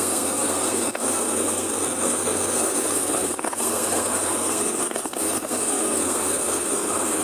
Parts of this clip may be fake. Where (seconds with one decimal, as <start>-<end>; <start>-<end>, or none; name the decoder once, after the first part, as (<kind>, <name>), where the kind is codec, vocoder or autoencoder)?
0.0-7.2 (codec, SNAC)